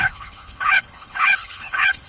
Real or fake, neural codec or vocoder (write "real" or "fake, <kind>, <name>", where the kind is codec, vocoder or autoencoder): fake, codec, HILCodec